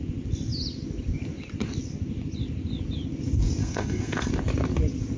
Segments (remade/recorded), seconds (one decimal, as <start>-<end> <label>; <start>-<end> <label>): 0.0-3.6 recorded; 3.6-4.3 remade; 4.3-5.2 recorded